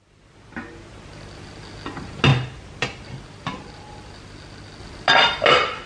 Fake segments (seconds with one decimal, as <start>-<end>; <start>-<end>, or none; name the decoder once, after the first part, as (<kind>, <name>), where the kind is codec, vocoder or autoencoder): none